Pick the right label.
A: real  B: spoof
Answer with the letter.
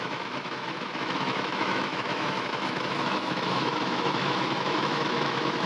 B